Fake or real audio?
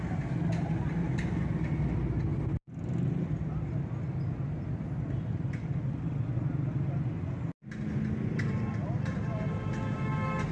real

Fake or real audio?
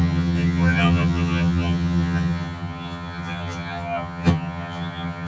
fake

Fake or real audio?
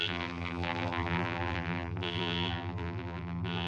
fake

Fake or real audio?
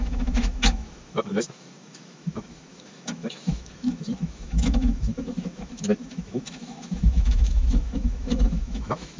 fake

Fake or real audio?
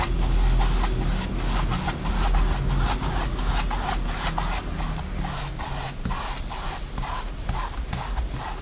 real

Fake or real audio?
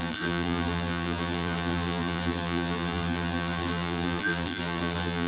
fake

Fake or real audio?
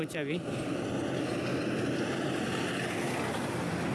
real